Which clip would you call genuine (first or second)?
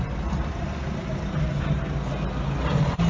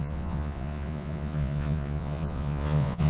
first